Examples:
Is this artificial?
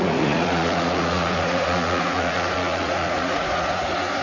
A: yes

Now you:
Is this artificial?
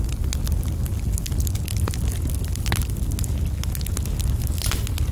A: no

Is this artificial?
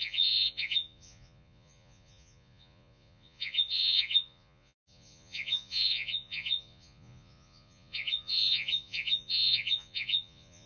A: yes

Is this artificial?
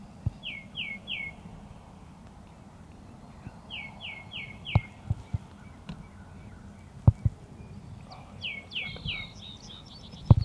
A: no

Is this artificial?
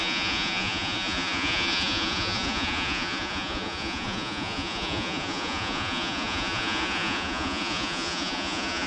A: yes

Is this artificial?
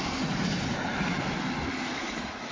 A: no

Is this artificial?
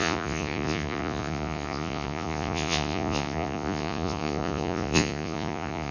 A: yes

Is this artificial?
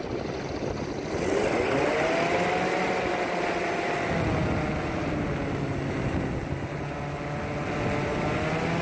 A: no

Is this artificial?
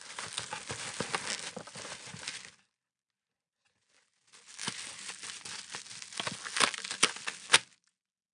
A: no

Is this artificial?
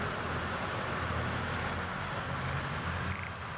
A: no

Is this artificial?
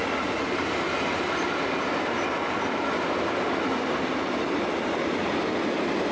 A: no